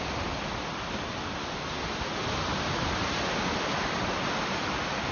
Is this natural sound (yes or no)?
yes